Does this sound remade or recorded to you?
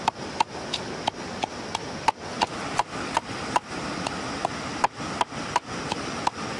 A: recorded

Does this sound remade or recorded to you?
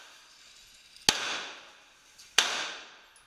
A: recorded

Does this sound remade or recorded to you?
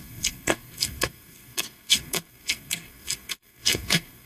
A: remade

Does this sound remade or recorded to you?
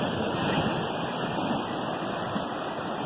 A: recorded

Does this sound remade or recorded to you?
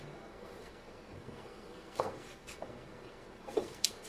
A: remade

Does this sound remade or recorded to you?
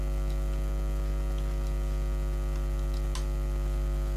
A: recorded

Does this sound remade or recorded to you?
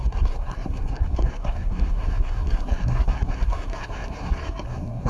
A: remade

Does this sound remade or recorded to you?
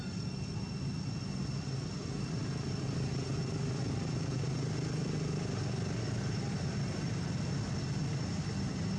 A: recorded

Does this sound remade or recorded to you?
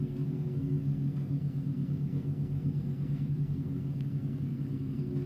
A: remade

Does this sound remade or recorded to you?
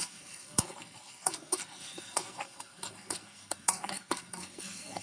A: remade